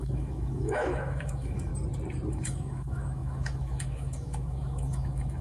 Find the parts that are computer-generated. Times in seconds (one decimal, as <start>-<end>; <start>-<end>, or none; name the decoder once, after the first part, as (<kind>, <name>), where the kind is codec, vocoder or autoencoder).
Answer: 0.0-1.7 (autoencoder, DAC-VAE); 2.3-5.4

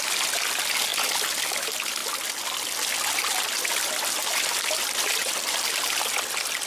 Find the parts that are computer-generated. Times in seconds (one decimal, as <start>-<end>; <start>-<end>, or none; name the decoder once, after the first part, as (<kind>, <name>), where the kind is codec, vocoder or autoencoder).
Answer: 0.0-0.9 (vocoder, BigVGAN v2); 1.4-2.0; 4.7-5.2; 6.3-6.7

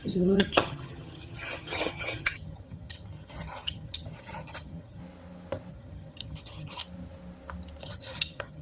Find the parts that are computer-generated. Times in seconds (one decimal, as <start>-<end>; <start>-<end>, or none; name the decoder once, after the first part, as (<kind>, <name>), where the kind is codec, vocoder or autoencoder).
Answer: 0.0-5.0 (vocoder, HiFi-GAN); 5.7-6.8; 7.8-8.6